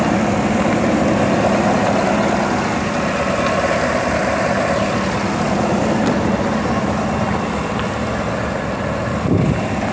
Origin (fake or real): real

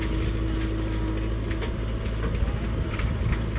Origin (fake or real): real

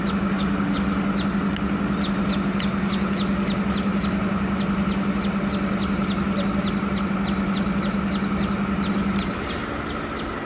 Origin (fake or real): real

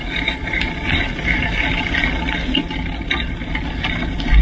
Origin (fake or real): real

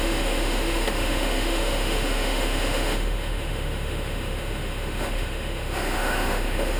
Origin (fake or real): fake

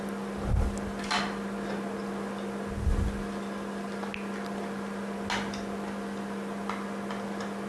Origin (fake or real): real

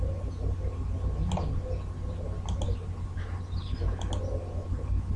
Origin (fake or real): real